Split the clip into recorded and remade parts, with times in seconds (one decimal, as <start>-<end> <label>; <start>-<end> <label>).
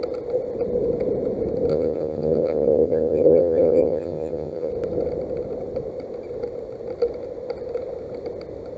0.0-1.7 recorded; 1.7-4.7 remade; 4.7-8.8 recorded